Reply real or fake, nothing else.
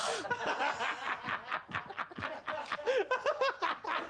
real